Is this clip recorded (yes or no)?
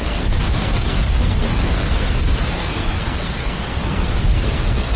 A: no